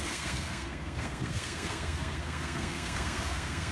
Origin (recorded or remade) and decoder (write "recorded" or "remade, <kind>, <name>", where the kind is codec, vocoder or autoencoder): remade, codec, SNAC